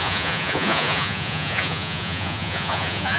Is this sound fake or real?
fake